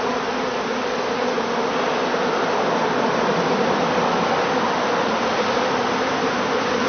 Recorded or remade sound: recorded